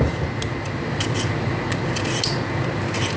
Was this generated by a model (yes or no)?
yes